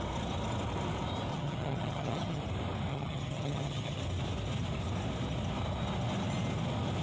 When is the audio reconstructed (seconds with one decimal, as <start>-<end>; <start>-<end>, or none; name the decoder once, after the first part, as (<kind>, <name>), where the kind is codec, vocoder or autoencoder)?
1.3-2.4 (vocoder, HiFi-GAN); 2.9-4.0